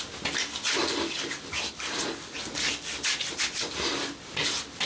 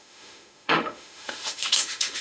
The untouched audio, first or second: first